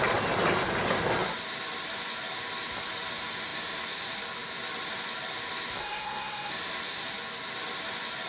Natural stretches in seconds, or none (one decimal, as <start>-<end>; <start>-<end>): 0.0-5.8; 6.5-8.3